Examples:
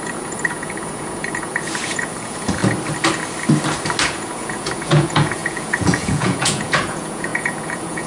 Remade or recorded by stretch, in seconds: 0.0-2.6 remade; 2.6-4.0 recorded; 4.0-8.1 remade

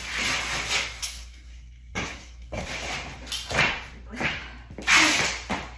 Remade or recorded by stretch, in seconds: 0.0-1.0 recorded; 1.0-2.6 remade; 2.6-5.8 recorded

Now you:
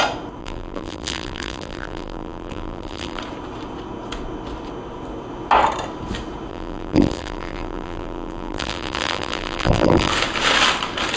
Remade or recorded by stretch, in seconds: 0.0-0.4 recorded; 0.4-3.2 remade; 3.2-6.5 recorded; 6.5-10.1 remade; 10.1-11.2 recorded